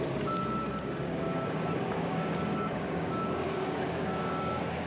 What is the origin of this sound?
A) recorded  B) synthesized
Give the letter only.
B